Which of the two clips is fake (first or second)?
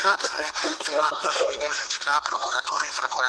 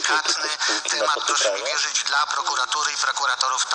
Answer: first